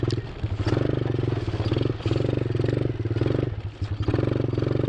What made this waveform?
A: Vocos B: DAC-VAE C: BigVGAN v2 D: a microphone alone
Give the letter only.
D